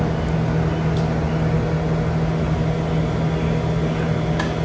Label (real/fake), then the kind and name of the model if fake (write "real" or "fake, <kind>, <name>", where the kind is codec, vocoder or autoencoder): real